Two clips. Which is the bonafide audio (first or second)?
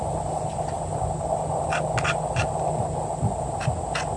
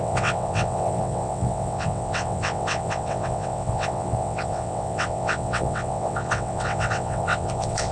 first